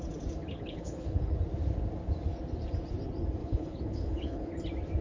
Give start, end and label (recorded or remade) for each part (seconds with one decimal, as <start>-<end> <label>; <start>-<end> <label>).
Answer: 0.0-0.4 recorded; 0.4-1.3 remade; 1.3-3.4 recorded; 3.4-4.5 remade; 4.5-5.0 recorded